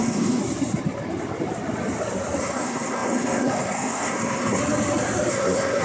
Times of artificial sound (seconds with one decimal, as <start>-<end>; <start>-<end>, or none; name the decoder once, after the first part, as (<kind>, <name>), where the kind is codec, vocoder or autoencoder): 0.0-0.4 (codec, SNAC); 2.4-4.6; 5.3-5.8